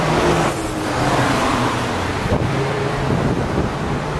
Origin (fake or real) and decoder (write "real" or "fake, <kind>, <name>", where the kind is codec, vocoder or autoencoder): fake, vocoder, BigVGAN v2